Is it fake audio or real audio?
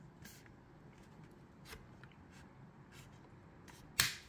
real